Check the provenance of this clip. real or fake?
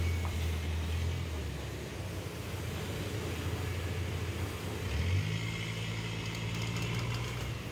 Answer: real